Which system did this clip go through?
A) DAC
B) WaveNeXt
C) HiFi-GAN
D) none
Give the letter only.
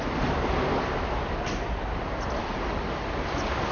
D